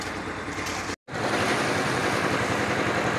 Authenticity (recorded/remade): recorded